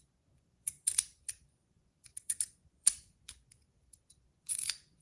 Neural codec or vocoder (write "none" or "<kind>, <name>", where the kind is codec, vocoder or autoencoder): vocoder, Vocos